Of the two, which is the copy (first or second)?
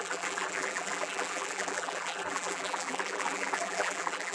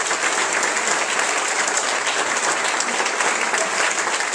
first